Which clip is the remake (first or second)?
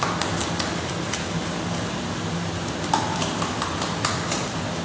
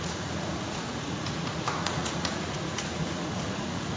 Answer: second